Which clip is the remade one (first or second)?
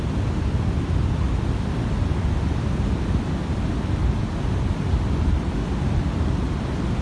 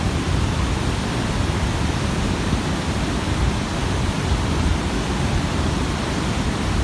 second